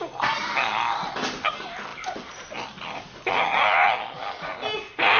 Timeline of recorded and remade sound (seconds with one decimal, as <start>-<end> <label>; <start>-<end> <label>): 0.0-5.2 recorded